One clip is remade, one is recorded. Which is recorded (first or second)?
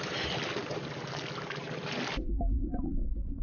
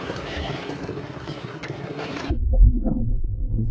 first